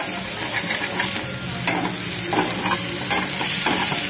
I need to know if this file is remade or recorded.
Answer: recorded